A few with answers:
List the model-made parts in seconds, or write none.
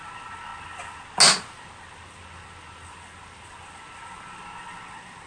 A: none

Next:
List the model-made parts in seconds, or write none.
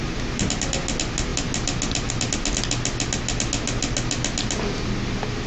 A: none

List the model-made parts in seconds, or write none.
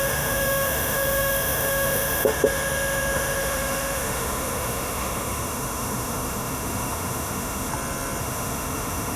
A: 0.0-7.7 (autoencoder, DAC-VAE); 8.2-9.2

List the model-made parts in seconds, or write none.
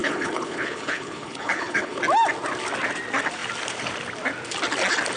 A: 0.0-2.0 (codec, HILCodec)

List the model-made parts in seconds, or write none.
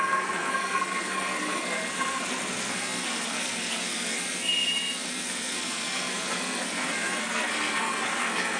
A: 0.0-8.6 (codec, SNAC)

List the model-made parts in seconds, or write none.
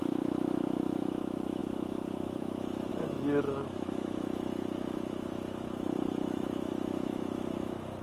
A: 0.0-8.0 (autoencoder, DAC-VAE)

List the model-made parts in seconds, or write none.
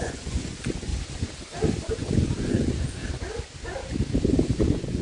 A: 0.0-0.9 (vocoder, Vocos); 1.9-3.0; 4.6-5.0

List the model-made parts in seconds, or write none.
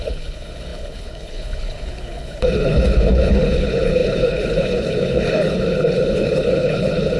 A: 0.0-7.2 (codec, HILCodec)